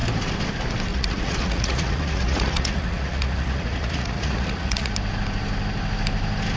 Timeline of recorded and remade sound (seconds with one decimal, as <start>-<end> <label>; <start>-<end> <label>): 0.0-0.9 recorded; 0.9-4.9 remade; 4.9-6.6 recorded